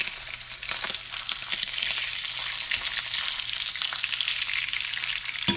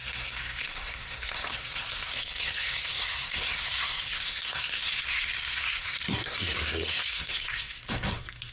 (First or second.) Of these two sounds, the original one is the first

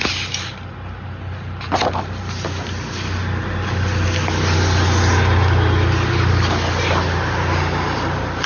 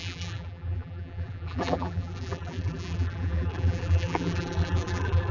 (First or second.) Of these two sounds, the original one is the first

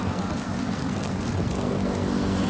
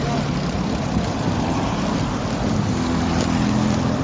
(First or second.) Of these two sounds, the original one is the second